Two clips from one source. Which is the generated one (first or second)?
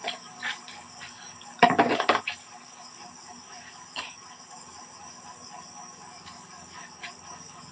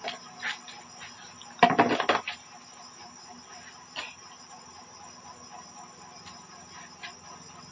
first